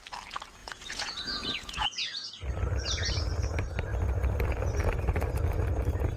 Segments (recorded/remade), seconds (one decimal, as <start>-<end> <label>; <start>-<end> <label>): 0.0-0.6 recorded; 0.6-2.3 remade; 2.3-6.2 recorded